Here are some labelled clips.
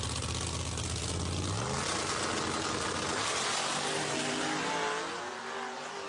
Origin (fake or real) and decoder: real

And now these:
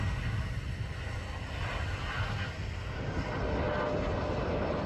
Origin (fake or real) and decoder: real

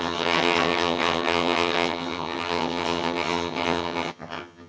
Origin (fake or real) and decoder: fake, vocoder, HiFi-GAN